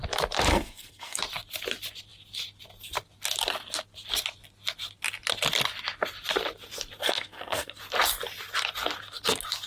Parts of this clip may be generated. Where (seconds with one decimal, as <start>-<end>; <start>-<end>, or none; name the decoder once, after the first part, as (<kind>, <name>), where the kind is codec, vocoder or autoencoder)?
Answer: 0.5-1.2 (codec, SNAC); 7.0-7.8